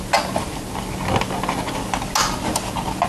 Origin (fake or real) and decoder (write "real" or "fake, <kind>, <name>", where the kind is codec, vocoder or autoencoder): real